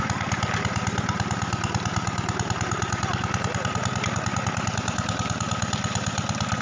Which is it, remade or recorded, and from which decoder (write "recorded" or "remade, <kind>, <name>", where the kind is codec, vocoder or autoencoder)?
recorded